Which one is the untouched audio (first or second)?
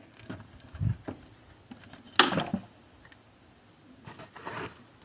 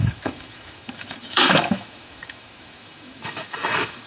first